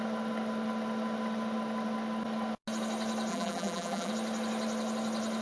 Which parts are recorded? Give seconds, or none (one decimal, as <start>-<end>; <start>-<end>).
0.0-3.3; 4.1-5.4